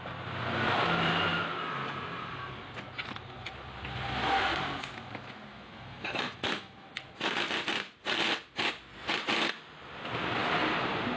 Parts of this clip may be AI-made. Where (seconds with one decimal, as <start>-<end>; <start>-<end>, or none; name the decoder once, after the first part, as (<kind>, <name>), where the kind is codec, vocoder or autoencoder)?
5.5-6.9 (autoencoder, DAC-VAE)